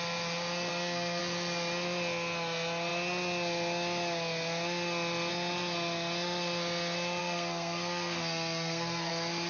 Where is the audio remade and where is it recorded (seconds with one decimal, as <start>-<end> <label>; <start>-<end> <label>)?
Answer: 0.0-0.7 recorded; 0.7-1.2 remade; 1.2-7.2 recorded; 7.2-9.1 remade; 9.1-9.5 recorded